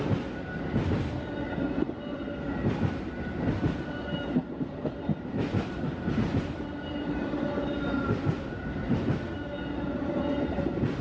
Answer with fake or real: real